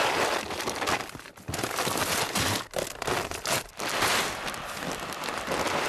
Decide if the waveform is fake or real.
real